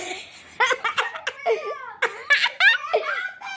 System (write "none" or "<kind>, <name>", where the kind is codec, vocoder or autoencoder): none